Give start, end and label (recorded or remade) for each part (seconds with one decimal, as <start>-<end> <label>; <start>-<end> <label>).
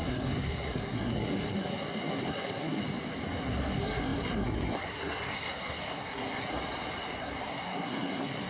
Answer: 0.0-2.8 remade; 2.8-3.4 recorded; 3.4-6.5 remade; 6.5-7.2 recorded; 7.2-8.5 remade